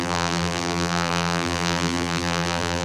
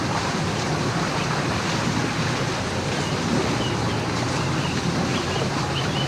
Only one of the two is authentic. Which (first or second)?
second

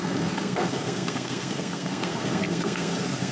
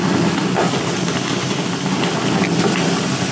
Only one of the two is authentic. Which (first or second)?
second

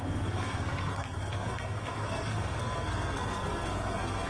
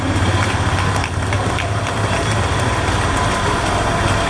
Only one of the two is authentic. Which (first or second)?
second